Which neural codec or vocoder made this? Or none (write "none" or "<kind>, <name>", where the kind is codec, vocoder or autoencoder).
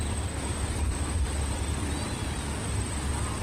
none